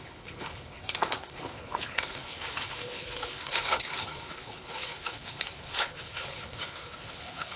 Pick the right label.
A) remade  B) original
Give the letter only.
A